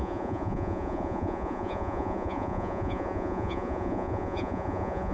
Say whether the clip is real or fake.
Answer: fake